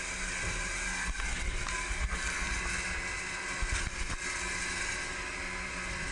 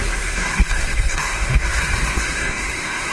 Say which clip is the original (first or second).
first